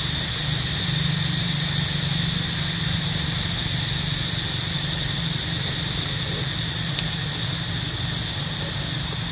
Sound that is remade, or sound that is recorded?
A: recorded